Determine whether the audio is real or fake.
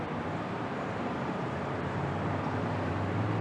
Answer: fake